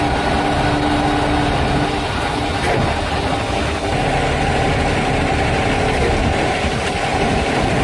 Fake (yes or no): no